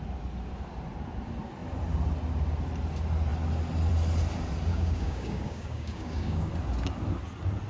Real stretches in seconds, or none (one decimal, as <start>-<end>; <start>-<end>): 0.0-4.7; 6.5-7.7